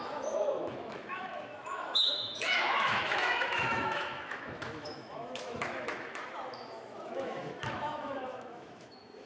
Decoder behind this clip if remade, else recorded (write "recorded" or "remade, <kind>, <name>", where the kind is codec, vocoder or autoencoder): remade, autoencoder, DAC-VAE